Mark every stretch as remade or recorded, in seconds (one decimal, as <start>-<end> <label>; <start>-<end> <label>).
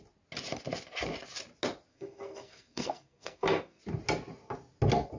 0.0-1.9 recorded; 1.9-3.8 remade; 3.8-5.2 recorded